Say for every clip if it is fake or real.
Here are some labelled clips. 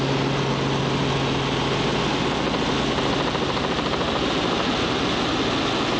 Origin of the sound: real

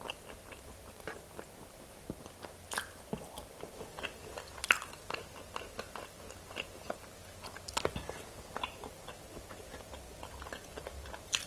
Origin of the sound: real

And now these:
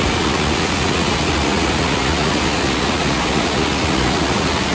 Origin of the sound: fake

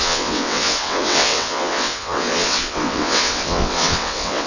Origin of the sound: fake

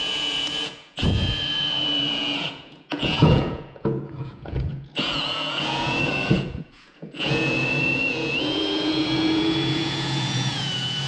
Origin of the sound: fake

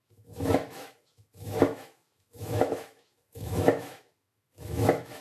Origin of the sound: fake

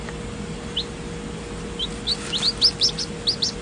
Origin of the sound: real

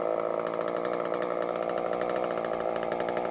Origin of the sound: real